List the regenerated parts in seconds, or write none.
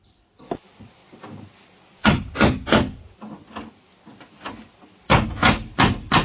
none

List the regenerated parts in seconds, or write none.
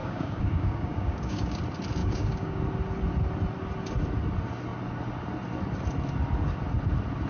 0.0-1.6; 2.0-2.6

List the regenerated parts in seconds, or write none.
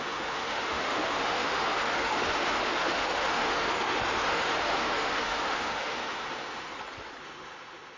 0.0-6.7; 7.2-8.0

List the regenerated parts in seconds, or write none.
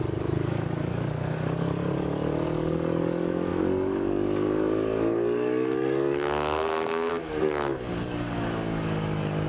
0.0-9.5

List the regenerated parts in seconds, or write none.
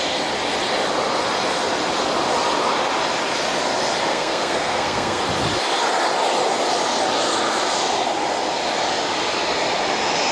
4.1-5.2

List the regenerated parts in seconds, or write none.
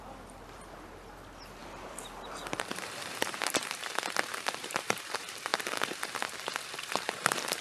1.6-3.9; 4.3-5.1